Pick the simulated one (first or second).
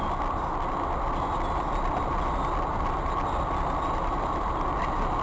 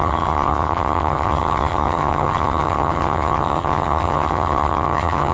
second